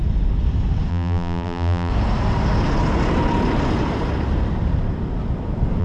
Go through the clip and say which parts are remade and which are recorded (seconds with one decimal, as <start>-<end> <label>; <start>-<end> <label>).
0.0-0.9 recorded; 0.9-1.9 remade; 1.9-5.8 recorded